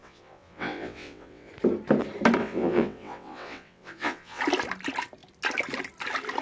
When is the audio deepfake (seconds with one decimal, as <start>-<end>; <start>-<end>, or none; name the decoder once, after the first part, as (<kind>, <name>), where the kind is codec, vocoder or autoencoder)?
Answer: 0.0-1.5 (vocoder, WaveNeXt); 2.4-4.4